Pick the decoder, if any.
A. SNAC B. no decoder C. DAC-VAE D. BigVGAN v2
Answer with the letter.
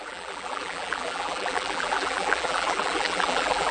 D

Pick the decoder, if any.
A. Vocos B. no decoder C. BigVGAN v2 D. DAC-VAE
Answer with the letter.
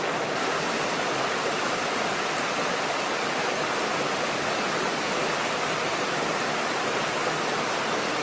B